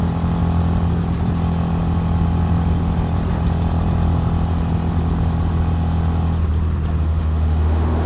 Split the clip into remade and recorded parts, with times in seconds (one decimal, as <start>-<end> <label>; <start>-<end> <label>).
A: 0.0-7.0 recorded; 7.0-8.1 remade